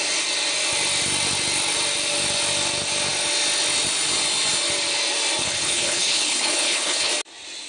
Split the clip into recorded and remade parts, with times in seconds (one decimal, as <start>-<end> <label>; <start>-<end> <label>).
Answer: 0.0-5.4 recorded; 5.4-7.1 remade; 7.1-7.7 recorded